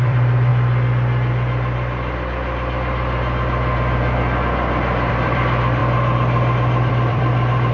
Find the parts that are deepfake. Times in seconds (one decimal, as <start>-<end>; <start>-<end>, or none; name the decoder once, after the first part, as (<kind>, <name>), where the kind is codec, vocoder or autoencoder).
0.0-0.5 (vocoder, BigVGAN v2); 5.1-5.8; 6.9-7.7